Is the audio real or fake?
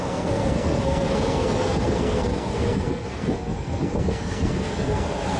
fake